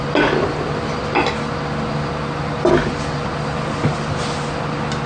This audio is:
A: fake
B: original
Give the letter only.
B